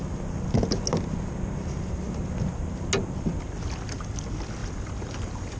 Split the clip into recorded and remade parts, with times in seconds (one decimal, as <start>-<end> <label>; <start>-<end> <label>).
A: 0.0-4.6 recorded; 4.6-5.6 remade